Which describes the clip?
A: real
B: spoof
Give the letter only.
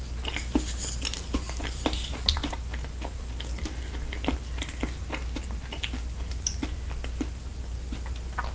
A